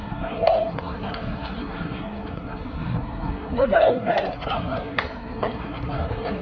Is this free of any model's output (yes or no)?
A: no